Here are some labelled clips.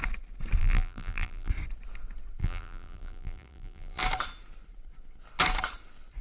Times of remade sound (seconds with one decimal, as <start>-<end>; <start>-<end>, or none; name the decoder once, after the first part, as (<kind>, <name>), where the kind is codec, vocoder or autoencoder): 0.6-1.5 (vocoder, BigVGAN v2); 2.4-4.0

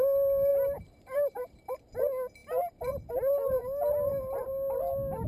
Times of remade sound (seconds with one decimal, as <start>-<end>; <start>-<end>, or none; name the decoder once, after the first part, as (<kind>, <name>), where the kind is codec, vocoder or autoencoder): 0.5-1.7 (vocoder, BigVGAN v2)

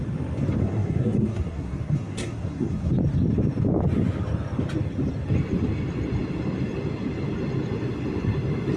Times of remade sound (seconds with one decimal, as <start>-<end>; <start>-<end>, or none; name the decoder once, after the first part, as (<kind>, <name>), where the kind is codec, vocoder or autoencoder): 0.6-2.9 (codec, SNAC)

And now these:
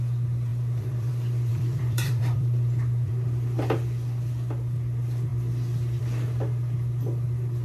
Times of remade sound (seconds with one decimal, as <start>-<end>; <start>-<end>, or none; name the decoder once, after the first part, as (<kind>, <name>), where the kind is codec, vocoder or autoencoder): 0.5-1.1 (vocoder, BigVGAN v2); 1.5-3.1